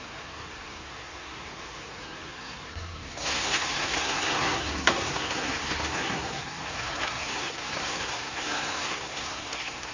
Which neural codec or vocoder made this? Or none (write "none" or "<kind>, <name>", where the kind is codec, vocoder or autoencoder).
codec, SNAC